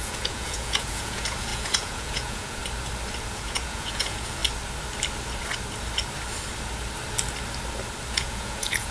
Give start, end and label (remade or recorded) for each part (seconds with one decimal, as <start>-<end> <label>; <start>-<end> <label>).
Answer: 0.0-2.6 remade; 2.6-3.3 recorded; 3.3-4.4 remade; 4.4-8.1 recorded; 8.1-8.9 remade